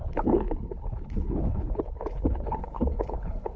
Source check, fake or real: fake